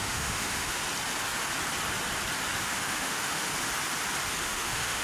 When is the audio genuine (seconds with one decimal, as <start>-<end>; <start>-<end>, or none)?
0.8-2.6; 3.5-4.4